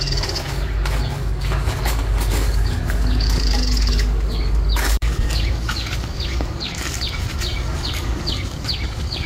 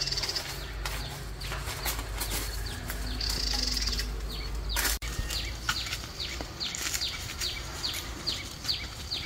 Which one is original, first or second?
second